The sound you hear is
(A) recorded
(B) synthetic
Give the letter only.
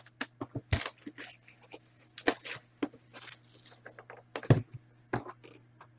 A